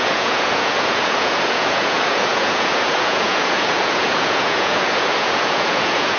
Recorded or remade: remade